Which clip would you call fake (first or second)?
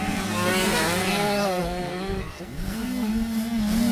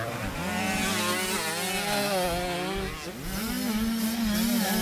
first